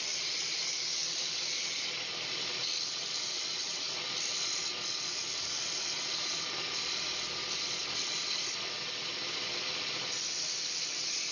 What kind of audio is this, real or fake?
real